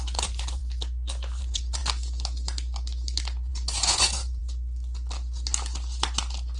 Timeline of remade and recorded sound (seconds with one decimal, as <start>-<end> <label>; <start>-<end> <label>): 0.0-0.6 remade; 0.6-1.4 recorded; 1.4-1.8 remade; 1.8-3.5 recorded; 3.5-4.4 remade; 4.4-6.6 recorded